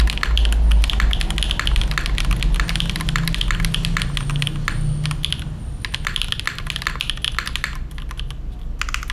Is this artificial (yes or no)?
no